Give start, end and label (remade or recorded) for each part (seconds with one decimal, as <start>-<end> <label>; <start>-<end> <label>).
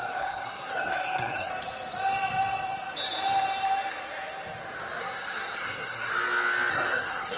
0.0-1.5 remade; 1.5-5.0 recorded; 5.0-6.1 remade; 6.1-6.7 recorded; 6.7-7.4 remade